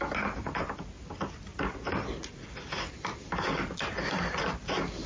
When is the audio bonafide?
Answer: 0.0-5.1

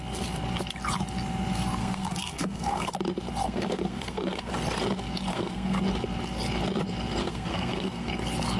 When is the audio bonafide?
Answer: 0.0-1.8; 2.9-3.4; 4.5-5.3; 5.8-7.2; 8.1-8.6

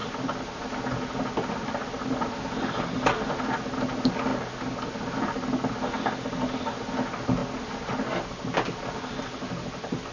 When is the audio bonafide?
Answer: 0.0-10.1